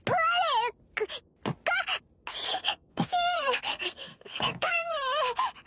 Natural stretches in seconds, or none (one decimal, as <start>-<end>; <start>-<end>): 0.0-2.5; 5.2-5.7